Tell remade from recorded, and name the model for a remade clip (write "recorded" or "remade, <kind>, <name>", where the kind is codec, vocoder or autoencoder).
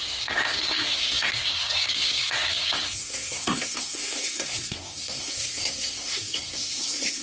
remade, codec, SNAC